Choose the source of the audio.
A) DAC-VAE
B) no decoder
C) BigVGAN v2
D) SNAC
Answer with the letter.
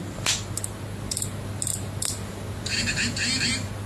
B